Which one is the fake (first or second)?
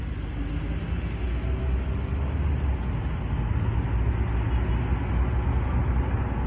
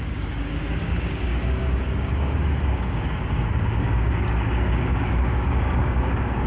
second